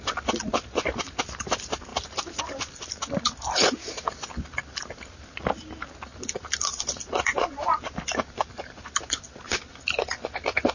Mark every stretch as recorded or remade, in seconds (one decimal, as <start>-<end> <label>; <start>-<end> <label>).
0.0-1.9 recorded; 1.9-2.9 remade; 2.9-6.1 recorded; 6.1-9.8 remade; 9.8-10.7 recorded